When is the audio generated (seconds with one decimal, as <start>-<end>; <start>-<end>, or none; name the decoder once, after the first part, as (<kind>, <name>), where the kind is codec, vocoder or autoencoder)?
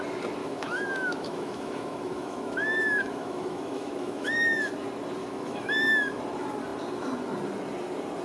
0.4-4.7 (autoencoder, DAC-VAE); 5.2-6.2